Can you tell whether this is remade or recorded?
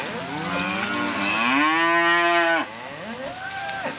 recorded